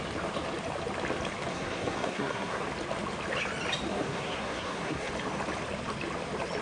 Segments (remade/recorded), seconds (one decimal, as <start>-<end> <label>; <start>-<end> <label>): 0.0-1.5 recorded; 1.5-2.6 remade; 2.6-3.9 recorded; 3.9-5.1 remade; 5.1-6.6 recorded